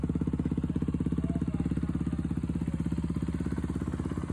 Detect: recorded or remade recorded